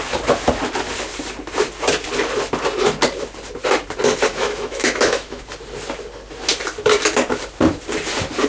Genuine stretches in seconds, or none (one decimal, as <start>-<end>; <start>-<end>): 0.0-4.3; 5.4-8.5